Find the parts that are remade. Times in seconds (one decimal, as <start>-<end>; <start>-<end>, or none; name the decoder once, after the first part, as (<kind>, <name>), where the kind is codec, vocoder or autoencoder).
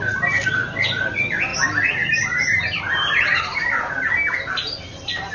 none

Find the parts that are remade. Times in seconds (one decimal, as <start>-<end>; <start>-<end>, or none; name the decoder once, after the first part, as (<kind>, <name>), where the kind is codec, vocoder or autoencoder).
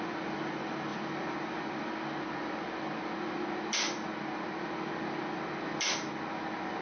none